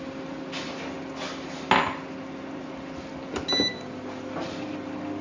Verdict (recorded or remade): recorded